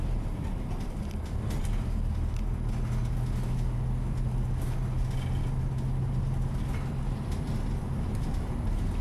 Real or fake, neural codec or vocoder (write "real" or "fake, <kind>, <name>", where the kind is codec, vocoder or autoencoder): real